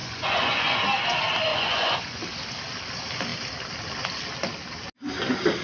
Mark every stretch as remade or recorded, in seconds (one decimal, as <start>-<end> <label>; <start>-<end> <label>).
0.0-0.8 remade; 0.8-1.5 recorded; 1.5-2.2 remade; 2.2-5.6 recorded